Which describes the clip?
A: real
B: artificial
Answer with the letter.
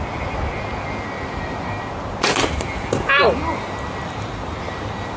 A